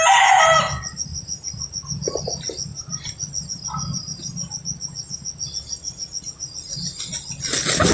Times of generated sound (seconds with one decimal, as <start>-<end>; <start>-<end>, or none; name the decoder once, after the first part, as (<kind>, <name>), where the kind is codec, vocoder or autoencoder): none